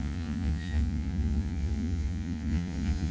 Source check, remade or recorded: remade